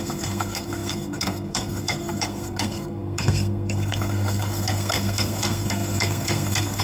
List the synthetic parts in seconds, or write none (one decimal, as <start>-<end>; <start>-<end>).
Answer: 0.0-6.8